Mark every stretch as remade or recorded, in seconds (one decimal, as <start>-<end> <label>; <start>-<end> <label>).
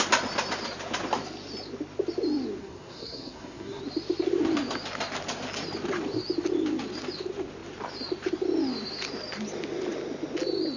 0.0-2.6 recorded; 2.6-3.8 remade; 3.8-10.8 recorded